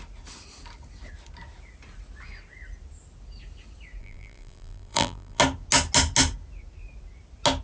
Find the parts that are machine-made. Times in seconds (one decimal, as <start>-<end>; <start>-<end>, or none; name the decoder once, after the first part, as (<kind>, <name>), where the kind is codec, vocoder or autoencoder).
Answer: 4.0-5.4 (vocoder, BigVGAN v2)